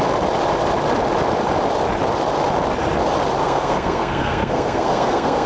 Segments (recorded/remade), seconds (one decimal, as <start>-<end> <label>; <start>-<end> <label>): 0.0-3.4 recorded; 3.4-5.5 remade